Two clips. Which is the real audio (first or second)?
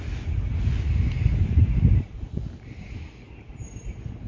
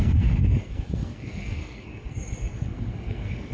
first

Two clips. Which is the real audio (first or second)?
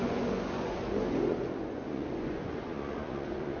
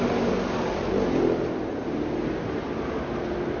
second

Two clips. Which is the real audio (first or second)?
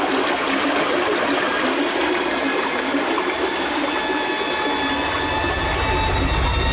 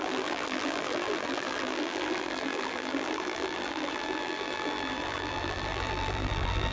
first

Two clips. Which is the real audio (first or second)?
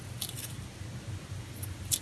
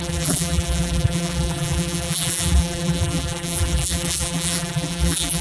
first